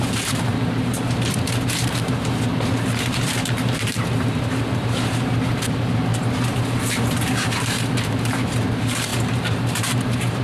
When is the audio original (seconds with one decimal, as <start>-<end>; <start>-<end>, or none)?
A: 2.5-3.1